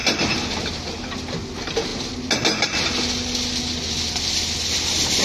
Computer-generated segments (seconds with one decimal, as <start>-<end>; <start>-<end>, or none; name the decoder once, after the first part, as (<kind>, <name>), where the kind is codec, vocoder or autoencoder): none